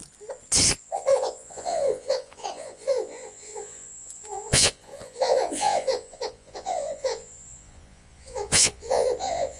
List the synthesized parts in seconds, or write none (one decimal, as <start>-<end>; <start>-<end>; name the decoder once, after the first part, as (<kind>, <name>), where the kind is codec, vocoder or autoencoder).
0.8-9.6 (vocoder, Vocos)